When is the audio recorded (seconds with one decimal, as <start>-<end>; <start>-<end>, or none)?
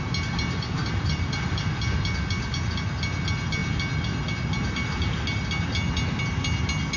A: 0.0-0.8; 1.7-7.0